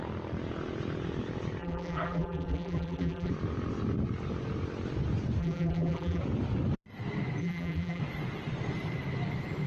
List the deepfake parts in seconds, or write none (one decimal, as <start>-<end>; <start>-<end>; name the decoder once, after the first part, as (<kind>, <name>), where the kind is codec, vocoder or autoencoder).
1.6-3.3 (vocoder, BigVGAN v2); 5.4-6.2; 7.4-8.0